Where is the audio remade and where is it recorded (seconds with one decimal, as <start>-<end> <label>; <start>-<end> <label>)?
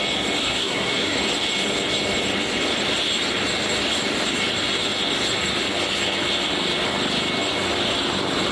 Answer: 0.0-0.4 recorded; 0.4-1.2 remade; 1.2-8.5 recorded